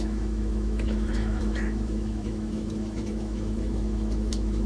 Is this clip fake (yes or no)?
yes